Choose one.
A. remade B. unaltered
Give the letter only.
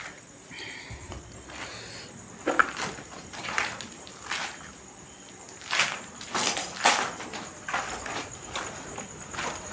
B